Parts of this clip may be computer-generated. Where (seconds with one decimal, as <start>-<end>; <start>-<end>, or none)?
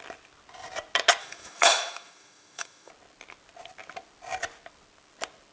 1.2-2.9